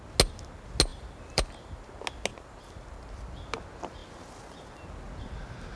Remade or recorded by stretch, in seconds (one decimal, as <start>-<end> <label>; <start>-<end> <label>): 0.0-0.9 recorded; 0.9-1.7 remade; 1.7-2.3 recorded; 2.3-3.1 remade; 3.1-5.8 recorded